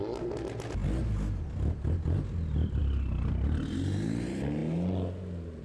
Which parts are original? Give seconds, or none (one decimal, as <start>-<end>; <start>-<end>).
0.0-5.6